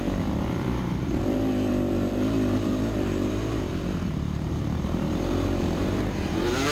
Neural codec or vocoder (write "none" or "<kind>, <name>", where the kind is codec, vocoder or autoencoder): vocoder, BigVGAN v2